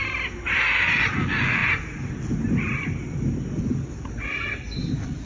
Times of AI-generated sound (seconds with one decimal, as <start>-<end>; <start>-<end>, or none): none